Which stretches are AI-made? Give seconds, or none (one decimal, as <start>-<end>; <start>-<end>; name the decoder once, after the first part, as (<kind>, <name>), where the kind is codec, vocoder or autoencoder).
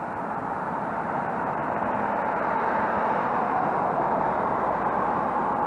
0.0-1.6 (vocoder, BigVGAN v2); 2.2-5.7